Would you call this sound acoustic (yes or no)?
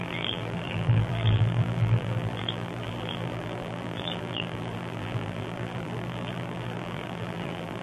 no